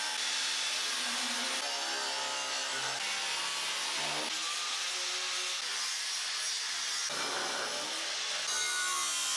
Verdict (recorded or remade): recorded